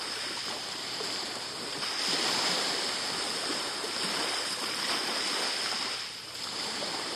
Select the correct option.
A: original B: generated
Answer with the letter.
B